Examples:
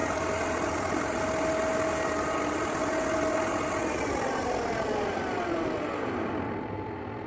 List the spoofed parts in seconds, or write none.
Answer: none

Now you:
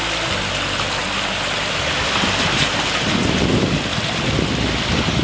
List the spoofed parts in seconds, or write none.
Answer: none

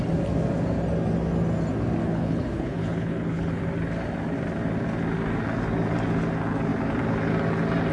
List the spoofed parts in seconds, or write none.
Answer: 2.0-3.6 (codec, HILCodec)

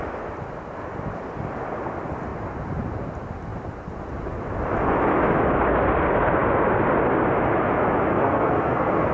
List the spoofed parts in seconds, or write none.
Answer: 8.1-9.1 (codec, SNAC)

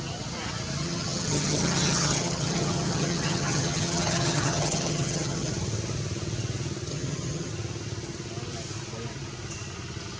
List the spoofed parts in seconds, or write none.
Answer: 0.8-5.5 (vocoder, HiFi-GAN); 6.9-7.5

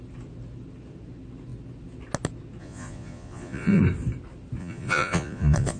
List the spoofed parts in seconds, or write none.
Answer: 2.6-3.8 (vocoder, Vocos); 4.6-5.8

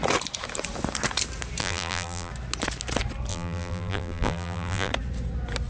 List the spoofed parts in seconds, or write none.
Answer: 1.6-2.3 (vocoder, BigVGAN v2); 3.3-4.9